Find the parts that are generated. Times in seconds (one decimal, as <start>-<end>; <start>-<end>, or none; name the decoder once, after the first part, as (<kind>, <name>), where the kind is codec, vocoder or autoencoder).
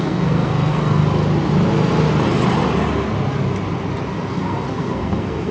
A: 0.0-1.0 (codec, SNAC); 4.3-5.5